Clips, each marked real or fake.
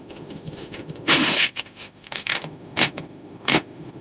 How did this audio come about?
fake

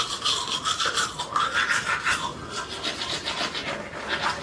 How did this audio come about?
real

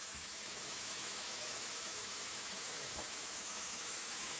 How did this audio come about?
fake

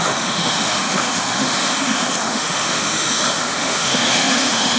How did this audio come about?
fake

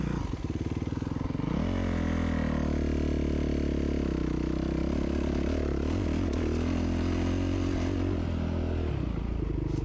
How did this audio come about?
real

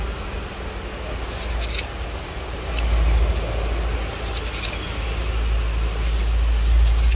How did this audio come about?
real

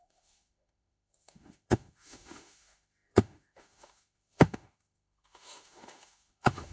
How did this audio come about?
fake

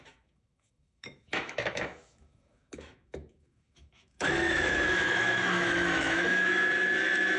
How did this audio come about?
fake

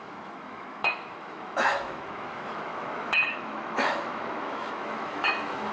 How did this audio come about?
fake